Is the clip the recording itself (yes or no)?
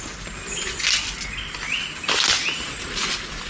yes